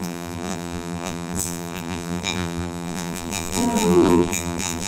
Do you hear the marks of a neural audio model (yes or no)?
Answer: yes